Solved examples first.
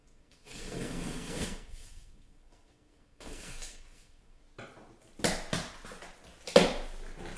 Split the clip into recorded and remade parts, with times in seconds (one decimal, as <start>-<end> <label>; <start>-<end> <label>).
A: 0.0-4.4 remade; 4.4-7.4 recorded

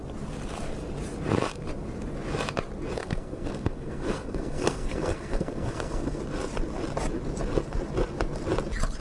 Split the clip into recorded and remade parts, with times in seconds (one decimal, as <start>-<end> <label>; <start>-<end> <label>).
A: 0.0-3.0 recorded; 3.0-6.2 remade; 6.2-9.0 recorded

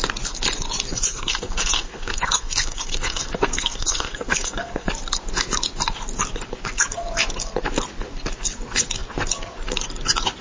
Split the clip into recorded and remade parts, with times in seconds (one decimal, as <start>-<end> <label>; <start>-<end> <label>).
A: 0.0-0.9 recorded; 0.9-4.9 remade; 4.9-10.4 recorded